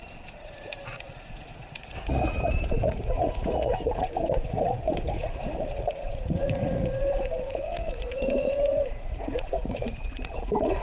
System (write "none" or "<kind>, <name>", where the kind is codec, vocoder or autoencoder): vocoder, Vocos